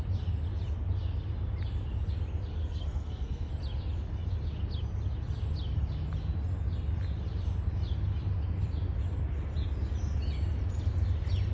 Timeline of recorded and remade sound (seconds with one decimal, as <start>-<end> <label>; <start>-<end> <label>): 0.0-2.6 recorded; 2.6-3.5 remade; 3.5-11.5 recorded